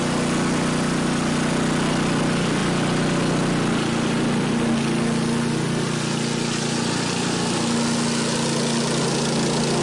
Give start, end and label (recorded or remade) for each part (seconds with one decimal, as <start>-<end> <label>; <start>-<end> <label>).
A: 0.0-9.8 recorded